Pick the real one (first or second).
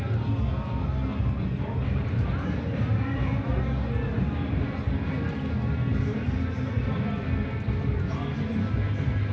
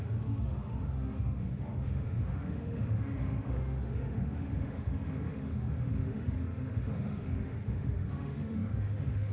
first